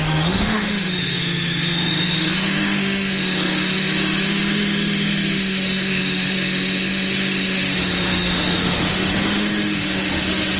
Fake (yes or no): yes